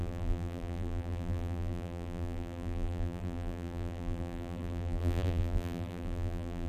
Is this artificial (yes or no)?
yes